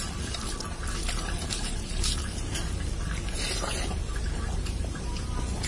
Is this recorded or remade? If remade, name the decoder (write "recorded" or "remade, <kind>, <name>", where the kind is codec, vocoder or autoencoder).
remade, vocoder, BigVGAN v2